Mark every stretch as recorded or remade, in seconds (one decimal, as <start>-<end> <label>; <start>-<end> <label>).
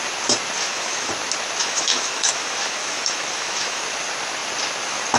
0.0-0.6 recorded; 0.6-1.1 remade; 1.1-1.6 recorded; 1.6-3.8 remade; 3.8-5.2 recorded